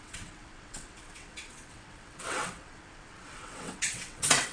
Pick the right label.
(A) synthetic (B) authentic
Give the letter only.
A